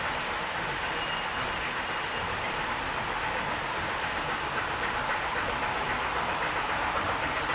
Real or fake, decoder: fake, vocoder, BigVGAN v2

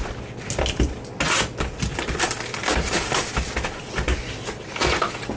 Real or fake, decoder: real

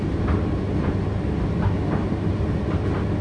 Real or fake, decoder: real